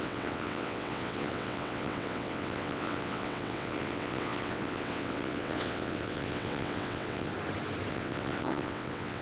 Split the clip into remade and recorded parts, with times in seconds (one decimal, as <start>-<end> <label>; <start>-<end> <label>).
0.0-7.3 remade; 7.3-7.9 recorded; 7.9-9.2 remade